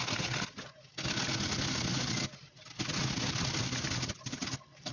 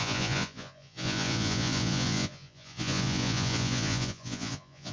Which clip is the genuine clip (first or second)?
first